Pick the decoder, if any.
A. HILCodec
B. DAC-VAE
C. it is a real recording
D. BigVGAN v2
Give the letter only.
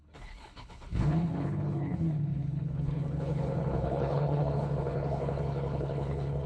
A